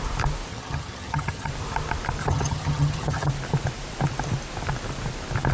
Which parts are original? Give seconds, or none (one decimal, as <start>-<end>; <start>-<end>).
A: 0.0-0.5; 1.5-2.2; 3.3-5.5

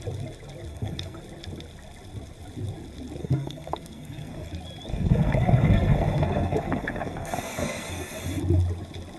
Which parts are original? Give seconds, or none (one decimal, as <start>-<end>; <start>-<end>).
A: 0.0-0.7; 1.2-3.2; 4.5-4.9; 8.2-9.2

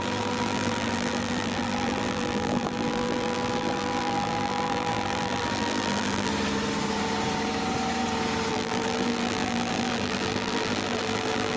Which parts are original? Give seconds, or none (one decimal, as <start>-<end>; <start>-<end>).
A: 6.3-8.5

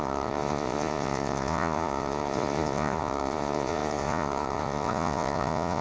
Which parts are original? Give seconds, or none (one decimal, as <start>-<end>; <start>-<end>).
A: none

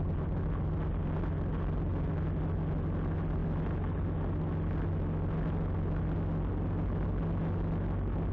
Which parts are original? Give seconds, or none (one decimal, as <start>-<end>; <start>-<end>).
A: 0.0-8.3

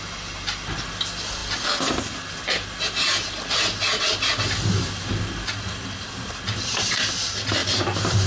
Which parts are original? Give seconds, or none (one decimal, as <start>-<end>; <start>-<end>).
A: 0.0-8.3